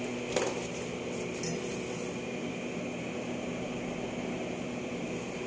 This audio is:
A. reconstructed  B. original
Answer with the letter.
B